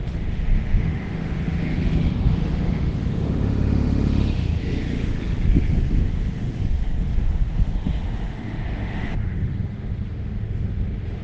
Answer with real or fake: fake